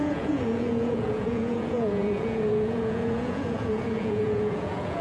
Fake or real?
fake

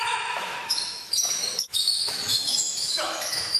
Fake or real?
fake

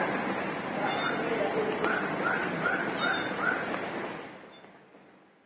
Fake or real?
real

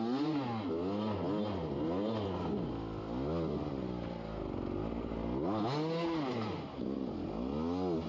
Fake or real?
real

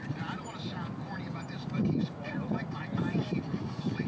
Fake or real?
real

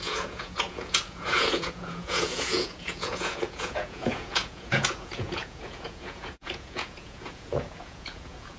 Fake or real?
fake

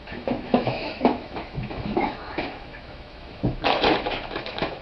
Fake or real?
fake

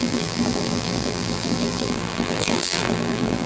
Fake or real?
fake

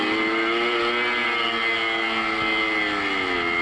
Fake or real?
real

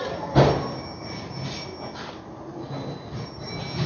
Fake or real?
real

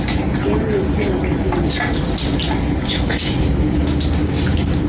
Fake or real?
real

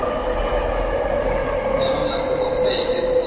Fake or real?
real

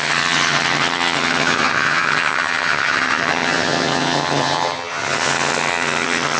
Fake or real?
fake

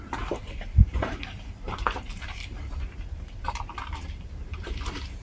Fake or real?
fake